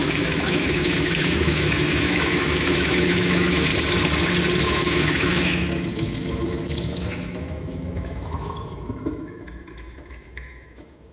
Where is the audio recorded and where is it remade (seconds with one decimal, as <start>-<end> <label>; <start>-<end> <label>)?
0.0-3.7 remade; 3.7-4.6 recorded; 4.6-11.1 remade

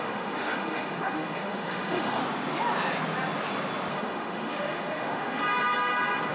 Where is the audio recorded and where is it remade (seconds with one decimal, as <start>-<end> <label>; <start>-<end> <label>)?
0.0-2.2 remade; 2.2-3.9 recorded; 3.9-5.4 remade; 5.4-6.3 recorded

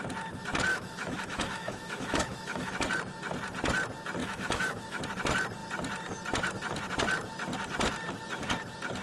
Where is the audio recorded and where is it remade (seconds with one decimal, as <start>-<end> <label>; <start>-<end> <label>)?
0.0-0.7 recorded; 0.7-2.7 remade; 2.7-4.2 recorded; 4.2-5.0 remade; 5.0-9.0 recorded

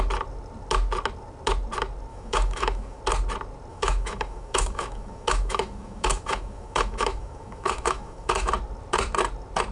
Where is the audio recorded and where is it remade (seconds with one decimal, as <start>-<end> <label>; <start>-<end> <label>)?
0.0-2.1 recorded; 2.1-3.0 remade; 3.0-3.7 recorded; 3.7-8.5 remade; 8.5-9.7 recorded

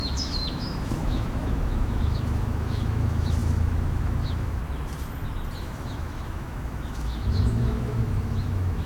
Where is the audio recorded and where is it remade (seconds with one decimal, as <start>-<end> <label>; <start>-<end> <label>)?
0.0-4.6 remade; 4.6-5.6 recorded; 5.6-8.8 remade